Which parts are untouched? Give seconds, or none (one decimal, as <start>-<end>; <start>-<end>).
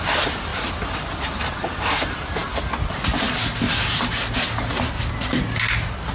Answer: 2.4-6.1